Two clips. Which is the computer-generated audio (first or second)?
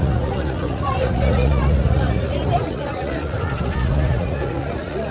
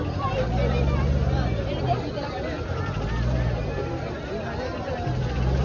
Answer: first